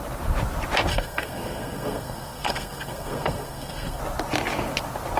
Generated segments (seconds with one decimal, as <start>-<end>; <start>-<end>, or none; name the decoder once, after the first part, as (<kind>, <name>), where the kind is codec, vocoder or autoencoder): 0.9-4.0 (codec, SNAC)